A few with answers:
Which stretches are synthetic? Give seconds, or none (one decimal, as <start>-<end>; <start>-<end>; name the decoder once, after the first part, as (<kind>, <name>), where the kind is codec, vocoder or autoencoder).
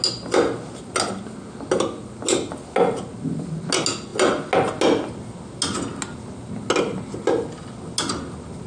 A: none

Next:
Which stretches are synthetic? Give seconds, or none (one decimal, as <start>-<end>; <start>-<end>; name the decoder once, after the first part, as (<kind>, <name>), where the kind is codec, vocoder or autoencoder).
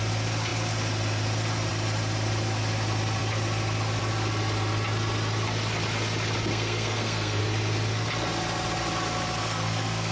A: 6.5-7.4 (codec, SNAC); 9.4-10.1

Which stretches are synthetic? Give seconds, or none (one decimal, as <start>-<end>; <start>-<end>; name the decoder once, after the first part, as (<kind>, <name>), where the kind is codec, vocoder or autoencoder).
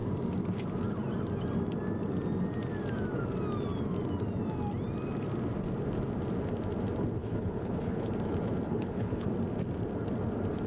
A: 7.2-8.1 (codec, HILCodec); 8.7-9.3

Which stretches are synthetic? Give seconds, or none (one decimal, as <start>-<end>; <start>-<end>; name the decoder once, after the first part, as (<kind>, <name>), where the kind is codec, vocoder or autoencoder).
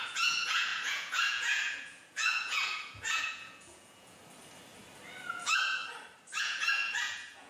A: 0.0-4.2 (vocoder, Vocos); 5.3-5.8; 6.4-7.5